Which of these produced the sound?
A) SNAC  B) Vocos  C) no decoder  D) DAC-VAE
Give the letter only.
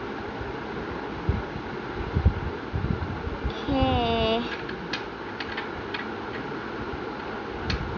C